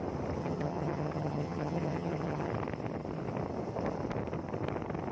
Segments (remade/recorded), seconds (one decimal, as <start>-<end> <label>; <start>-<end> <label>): 0.0-0.4 recorded; 0.4-2.5 remade; 2.5-5.1 recorded